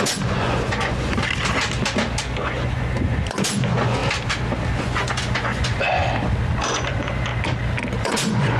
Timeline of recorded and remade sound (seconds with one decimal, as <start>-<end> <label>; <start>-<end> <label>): 0.0-1.1 remade; 1.1-2.2 recorded; 2.2-4.0 remade; 4.0-4.8 recorded; 4.8-6.0 remade; 6.0-6.7 recorded; 6.7-7.3 remade; 7.3-8.0 recorded; 8.0-8.6 remade